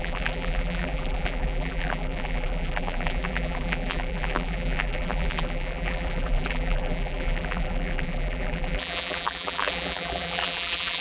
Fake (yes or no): yes